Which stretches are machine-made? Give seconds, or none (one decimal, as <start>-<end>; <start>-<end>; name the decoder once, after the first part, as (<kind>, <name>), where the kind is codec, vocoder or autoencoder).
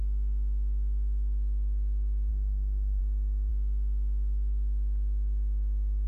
2.3-3.0 (codec, SNAC)